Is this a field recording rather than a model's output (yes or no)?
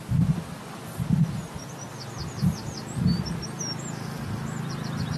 yes